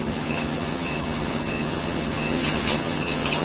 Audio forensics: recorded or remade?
remade